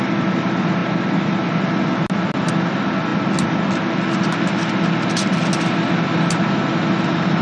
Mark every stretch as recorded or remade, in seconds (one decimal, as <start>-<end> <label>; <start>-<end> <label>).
0.0-7.4 recorded